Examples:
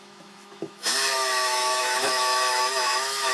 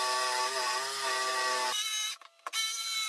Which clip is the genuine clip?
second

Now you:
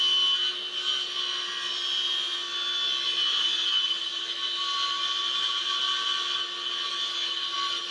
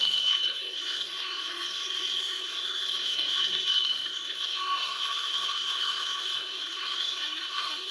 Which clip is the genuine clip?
first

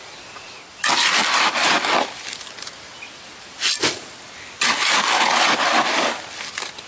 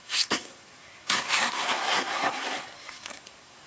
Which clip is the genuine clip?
first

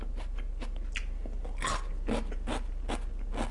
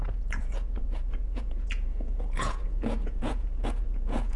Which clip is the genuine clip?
first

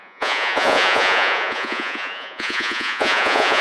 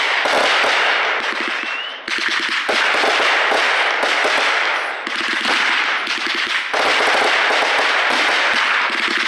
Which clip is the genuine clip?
second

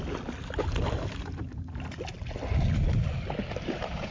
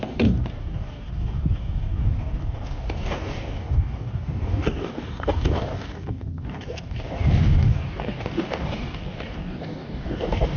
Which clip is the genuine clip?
first